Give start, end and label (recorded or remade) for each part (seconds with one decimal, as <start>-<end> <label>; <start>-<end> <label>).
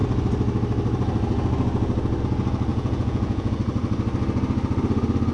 0.0-2.7 recorded; 2.7-3.5 remade; 3.5-5.3 recorded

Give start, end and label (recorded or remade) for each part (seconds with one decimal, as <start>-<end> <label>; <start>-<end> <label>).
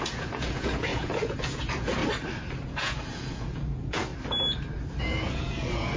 0.0-2.0 remade; 2.0-2.6 recorded; 2.6-4.1 remade; 4.1-5.0 recorded; 5.0-6.0 remade